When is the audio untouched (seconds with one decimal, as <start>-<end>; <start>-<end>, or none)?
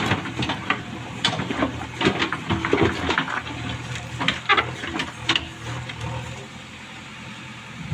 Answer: 0.0-7.1